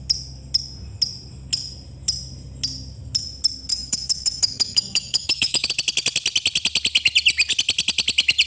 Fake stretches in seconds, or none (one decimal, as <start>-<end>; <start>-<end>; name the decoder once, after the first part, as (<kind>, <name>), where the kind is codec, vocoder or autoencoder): 3.7-5.7 (autoencoder, DAC-VAE)